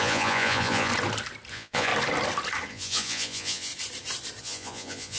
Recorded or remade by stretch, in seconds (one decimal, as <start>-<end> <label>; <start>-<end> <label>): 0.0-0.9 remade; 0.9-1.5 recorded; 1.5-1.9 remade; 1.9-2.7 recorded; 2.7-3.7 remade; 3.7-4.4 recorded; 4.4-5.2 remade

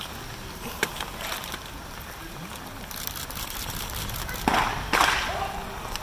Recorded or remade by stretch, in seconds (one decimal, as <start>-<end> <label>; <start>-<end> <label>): 0.0-6.0 recorded

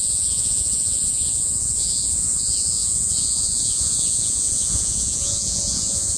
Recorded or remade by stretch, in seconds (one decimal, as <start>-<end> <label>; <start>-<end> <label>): 0.0-6.2 remade